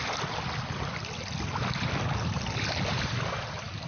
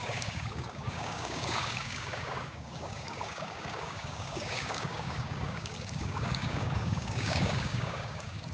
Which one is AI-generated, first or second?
second